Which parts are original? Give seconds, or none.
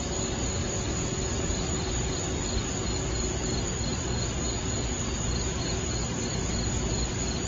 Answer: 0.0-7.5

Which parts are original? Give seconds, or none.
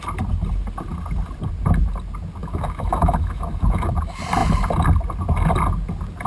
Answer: 0.0-2.4; 3.9-6.3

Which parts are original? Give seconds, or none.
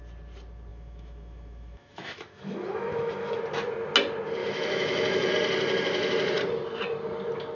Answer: 0.0-0.7; 3.4-4.4; 5.3-7.6